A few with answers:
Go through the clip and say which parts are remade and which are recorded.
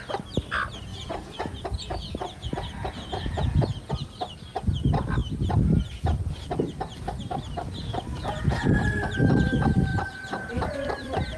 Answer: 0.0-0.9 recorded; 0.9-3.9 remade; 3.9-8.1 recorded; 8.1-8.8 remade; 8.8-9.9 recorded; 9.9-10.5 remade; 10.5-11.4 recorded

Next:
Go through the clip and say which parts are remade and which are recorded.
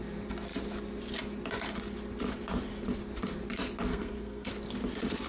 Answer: 0.0-3.9 recorded; 3.9-4.5 remade; 4.5-5.3 recorded